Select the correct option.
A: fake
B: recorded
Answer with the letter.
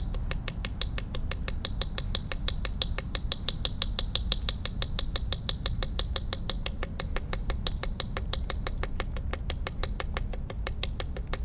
B